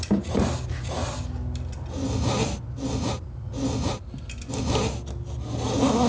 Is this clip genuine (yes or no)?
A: yes